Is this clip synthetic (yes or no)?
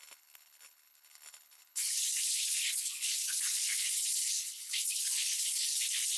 yes